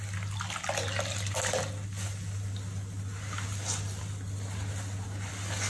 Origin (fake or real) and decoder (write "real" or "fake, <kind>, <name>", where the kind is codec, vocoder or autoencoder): real